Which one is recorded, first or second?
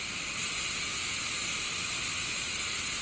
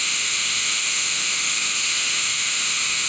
first